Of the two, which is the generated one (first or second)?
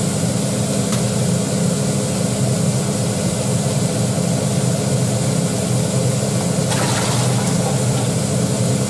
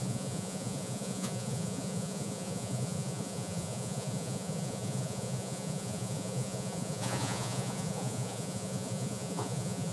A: second